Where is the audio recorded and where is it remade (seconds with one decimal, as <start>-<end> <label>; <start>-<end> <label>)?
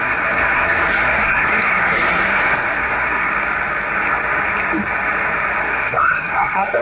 0.0-3.3 remade; 3.3-5.6 recorded; 5.6-6.8 remade